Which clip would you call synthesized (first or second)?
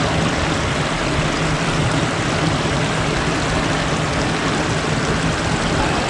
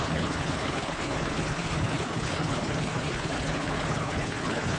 second